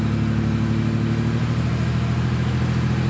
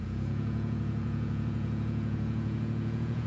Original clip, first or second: first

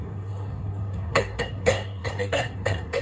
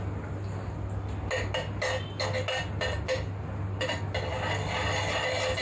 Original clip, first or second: second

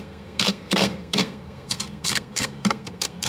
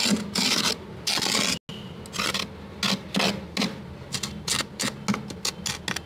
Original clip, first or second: second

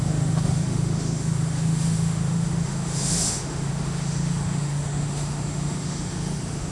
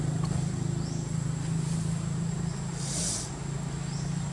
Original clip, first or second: second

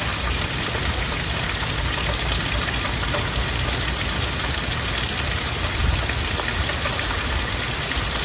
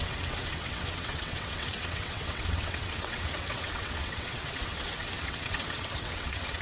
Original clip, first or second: first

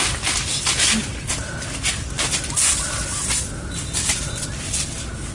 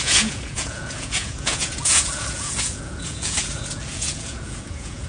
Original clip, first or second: first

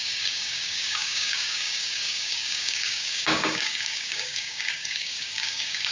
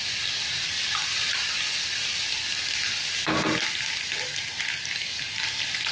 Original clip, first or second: second